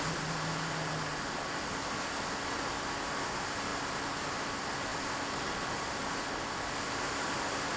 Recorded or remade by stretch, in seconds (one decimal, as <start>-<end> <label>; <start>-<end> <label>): 0.0-7.8 recorded